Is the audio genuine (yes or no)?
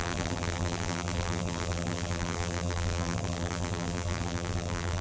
no